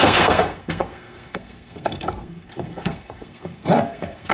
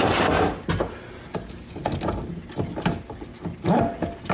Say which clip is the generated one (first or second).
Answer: first